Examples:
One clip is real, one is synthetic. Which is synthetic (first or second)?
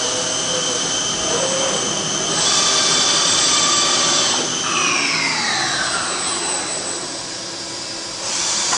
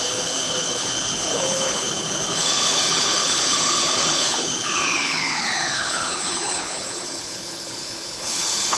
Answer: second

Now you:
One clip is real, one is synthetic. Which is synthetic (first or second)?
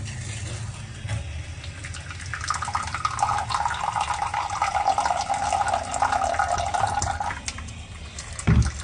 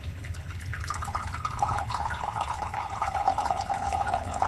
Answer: second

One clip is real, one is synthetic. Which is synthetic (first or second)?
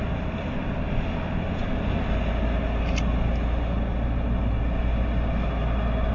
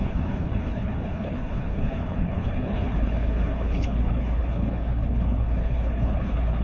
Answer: second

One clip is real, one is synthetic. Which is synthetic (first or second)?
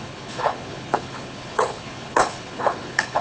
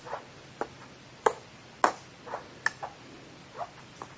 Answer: first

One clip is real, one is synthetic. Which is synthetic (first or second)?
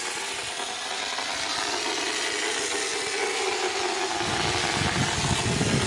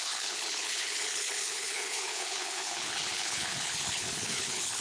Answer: second